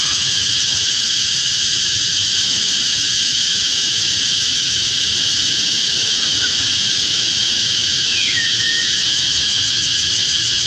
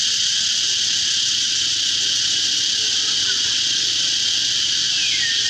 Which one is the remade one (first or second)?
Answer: first